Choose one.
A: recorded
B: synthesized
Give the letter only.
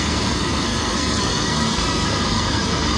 B